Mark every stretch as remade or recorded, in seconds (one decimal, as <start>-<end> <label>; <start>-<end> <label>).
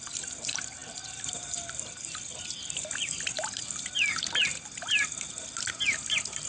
0.0-6.5 recorded